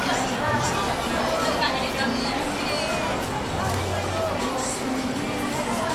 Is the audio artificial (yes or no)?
no